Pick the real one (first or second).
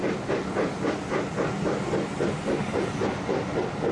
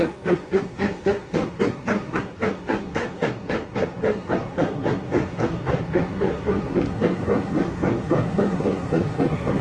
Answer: first